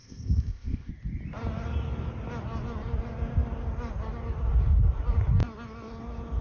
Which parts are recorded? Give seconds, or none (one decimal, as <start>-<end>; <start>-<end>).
0.9-6.4